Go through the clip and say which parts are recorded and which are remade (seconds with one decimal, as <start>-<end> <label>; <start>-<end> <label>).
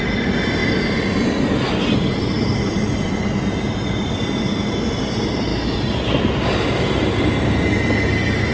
0.0-2.5 recorded; 2.5-3.2 remade; 3.2-8.5 recorded